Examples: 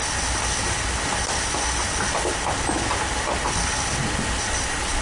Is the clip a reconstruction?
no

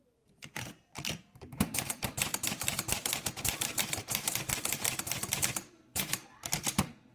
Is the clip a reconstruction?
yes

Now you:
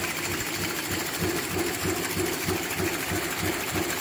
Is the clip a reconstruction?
no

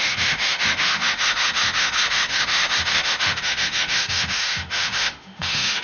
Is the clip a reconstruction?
yes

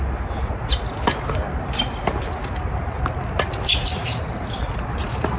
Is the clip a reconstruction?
no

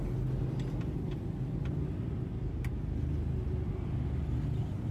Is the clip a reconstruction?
no